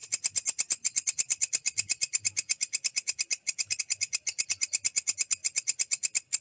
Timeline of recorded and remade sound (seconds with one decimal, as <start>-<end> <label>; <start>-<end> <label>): 0.0-6.4 recorded